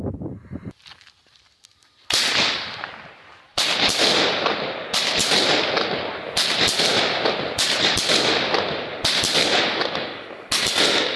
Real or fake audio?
real